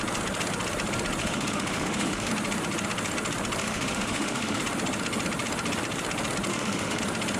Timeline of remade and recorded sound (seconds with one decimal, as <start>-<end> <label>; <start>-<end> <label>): 0.0-1.2 recorded; 1.2-2.3 remade; 2.3-3.6 recorded; 3.6-4.6 remade; 4.6-6.5 recorded; 6.5-7.0 remade; 7.0-7.4 recorded